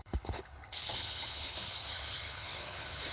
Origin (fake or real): fake